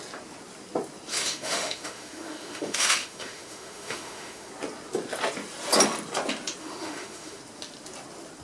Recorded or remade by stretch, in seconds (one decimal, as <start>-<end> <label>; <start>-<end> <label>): 0.0-1.1 recorded; 1.1-4.5 remade; 4.5-6.6 recorded; 6.6-7.4 remade; 7.4-8.4 recorded